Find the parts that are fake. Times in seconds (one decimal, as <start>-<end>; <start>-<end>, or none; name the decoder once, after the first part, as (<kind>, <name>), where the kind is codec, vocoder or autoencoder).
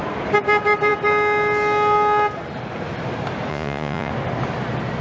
3.5-4.1 (vocoder, Vocos)